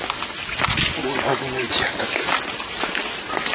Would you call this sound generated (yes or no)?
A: no